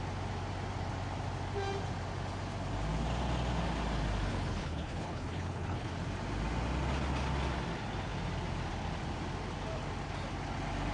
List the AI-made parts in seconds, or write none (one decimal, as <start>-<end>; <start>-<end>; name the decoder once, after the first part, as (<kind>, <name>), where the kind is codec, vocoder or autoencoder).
4.3-5.9 (codec, HILCodec)